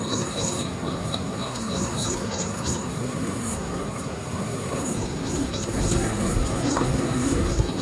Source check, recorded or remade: remade